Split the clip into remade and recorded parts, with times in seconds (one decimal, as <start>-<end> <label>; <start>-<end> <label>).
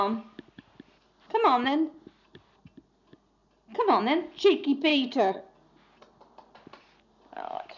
0.0-4.9 recorded; 4.9-5.4 remade; 5.4-7.8 recorded